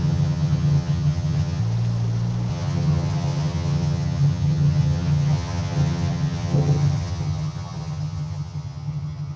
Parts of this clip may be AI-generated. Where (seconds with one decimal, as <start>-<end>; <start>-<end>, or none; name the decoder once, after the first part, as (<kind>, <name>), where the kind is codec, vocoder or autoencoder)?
0.0-1.6 (vocoder, HiFi-GAN); 2.5-9.4